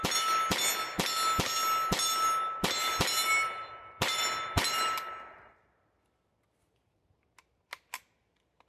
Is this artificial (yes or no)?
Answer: no